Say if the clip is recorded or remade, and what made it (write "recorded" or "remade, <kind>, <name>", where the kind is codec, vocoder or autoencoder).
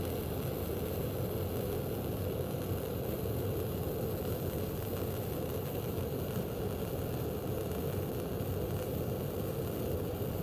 recorded